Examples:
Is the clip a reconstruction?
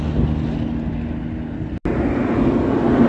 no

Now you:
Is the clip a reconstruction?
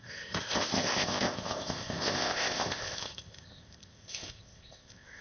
yes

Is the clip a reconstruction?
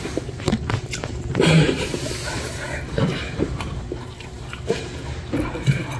yes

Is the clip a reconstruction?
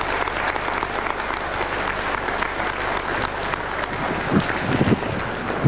no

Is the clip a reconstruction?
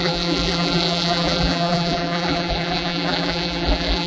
yes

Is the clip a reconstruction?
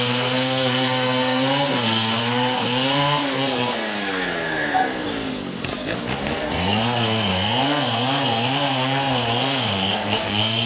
yes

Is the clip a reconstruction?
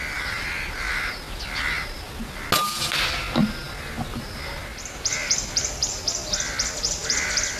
no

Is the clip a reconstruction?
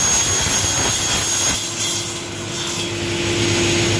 no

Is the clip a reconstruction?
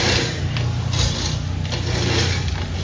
no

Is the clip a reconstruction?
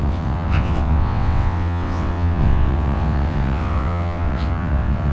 yes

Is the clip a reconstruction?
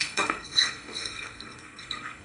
yes